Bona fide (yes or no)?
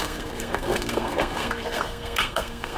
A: no